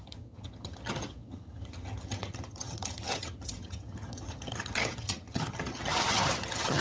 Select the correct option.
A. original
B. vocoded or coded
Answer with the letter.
B